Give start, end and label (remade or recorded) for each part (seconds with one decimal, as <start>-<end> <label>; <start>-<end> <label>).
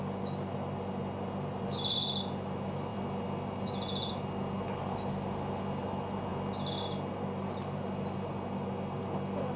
0.0-9.6 recorded